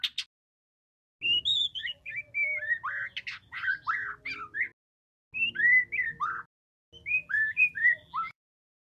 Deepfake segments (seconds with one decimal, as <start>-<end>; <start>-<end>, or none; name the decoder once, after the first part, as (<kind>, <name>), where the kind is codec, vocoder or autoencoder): 1.5-2.1 (vocoder, BigVGAN v2); 7.2-8.9